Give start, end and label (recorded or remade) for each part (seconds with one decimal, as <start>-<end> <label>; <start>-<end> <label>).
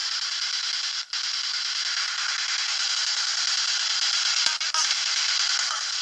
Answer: 0.0-4.8 recorded; 4.8-5.5 remade; 5.5-6.0 recorded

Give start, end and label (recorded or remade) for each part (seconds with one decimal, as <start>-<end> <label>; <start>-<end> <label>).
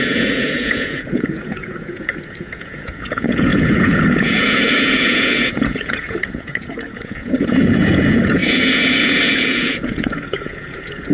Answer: 0.0-11.1 remade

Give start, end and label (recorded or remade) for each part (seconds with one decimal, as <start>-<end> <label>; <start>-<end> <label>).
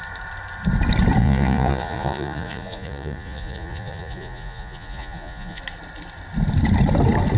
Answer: 0.0-1.2 recorded; 1.2-5.6 remade; 5.6-7.4 recorded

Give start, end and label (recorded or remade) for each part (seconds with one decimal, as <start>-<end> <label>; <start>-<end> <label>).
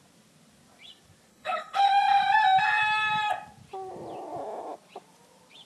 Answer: 0.0-1.3 recorded; 1.3-1.9 remade; 1.9-5.7 recorded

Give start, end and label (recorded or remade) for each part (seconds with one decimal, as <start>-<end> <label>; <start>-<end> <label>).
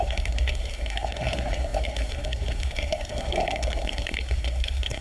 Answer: 0.0-5.0 remade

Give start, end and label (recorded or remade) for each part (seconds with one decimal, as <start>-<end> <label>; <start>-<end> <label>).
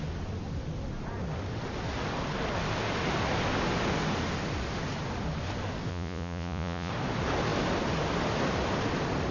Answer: 0.0-5.9 recorded; 5.9-6.9 remade; 6.9-9.3 recorded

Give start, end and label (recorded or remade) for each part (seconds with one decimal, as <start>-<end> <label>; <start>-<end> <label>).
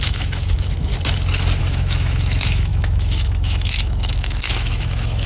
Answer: 0.0-0.9 remade; 0.9-1.6 recorded; 1.6-5.3 remade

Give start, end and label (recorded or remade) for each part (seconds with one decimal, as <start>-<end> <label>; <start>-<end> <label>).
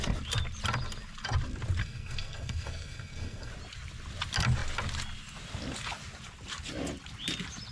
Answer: 0.0-1.8 recorded; 1.8-3.5 remade; 3.5-7.7 recorded